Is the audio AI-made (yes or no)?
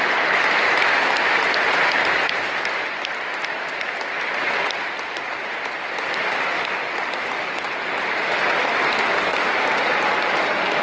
no